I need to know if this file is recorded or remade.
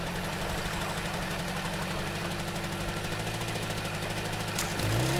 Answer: recorded